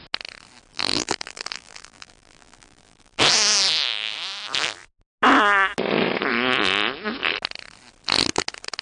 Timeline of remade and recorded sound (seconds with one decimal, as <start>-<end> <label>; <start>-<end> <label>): 0.0-0.7 recorded; 0.7-3.2 remade; 3.2-8.8 recorded